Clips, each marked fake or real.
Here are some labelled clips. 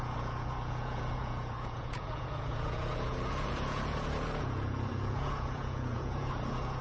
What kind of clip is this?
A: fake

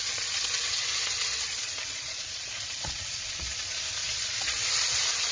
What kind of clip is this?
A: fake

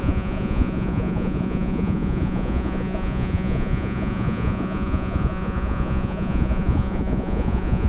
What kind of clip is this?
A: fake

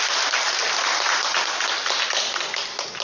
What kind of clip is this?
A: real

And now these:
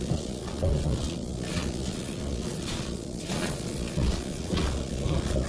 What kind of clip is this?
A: fake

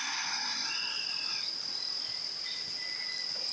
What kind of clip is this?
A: real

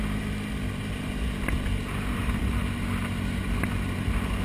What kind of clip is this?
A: real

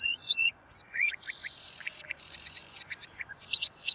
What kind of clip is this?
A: fake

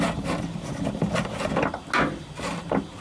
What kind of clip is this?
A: real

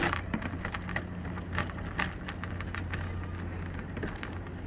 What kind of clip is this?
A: real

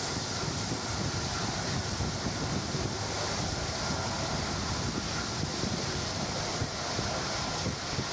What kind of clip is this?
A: real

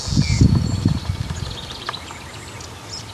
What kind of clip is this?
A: real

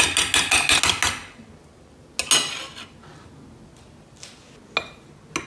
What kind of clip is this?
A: real